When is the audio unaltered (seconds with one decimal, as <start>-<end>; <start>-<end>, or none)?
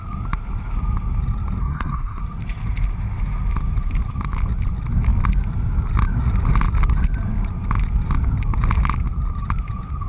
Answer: 0.0-1.6; 2.2-10.1